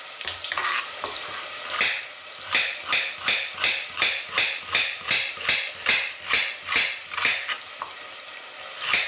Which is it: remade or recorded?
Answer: recorded